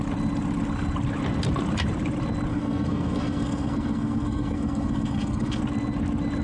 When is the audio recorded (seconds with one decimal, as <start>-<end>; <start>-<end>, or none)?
0.0-2.5; 5.6-6.4